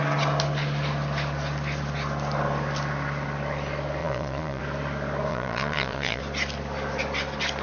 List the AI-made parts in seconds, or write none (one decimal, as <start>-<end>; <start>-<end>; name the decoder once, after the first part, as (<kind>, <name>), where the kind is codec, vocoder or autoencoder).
4.0-4.6 (vocoder, Vocos); 5.3-6.2